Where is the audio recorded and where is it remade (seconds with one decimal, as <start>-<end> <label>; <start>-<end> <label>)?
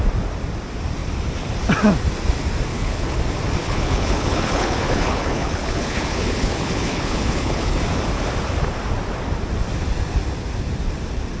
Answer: 0.0-2.7 recorded; 2.7-3.2 remade; 3.2-3.6 recorded; 3.6-7.8 remade; 7.8-11.4 recorded